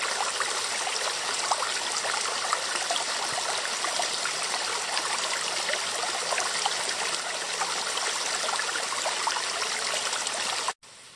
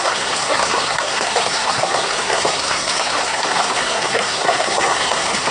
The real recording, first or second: first